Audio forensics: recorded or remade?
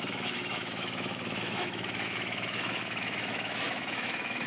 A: remade